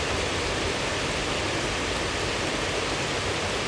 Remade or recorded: recorded